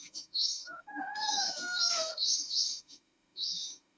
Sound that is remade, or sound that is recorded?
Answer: remade